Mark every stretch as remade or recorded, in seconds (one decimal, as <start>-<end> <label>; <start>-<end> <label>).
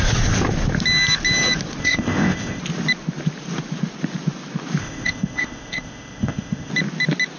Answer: 0.0-1.8 recorded; 1.8-2.6 remade; 2.6-4.8 recorded; 4.8-6.7 remade; 6.7-7.4 recorded